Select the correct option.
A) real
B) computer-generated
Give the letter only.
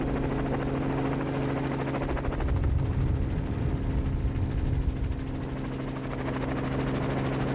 A